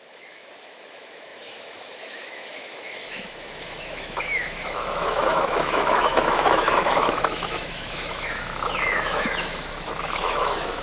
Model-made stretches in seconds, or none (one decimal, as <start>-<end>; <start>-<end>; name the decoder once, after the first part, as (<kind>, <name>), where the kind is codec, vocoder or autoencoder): 0.0-10.8 (autoencoder, DAC-VAE)